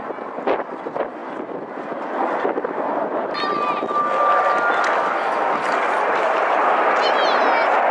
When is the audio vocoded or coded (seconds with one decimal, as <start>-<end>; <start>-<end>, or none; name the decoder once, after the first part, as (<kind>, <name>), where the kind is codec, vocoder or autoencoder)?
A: none